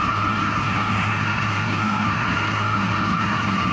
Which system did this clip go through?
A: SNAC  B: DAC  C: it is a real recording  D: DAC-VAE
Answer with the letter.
A